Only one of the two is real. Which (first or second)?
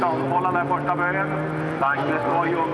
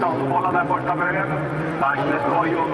first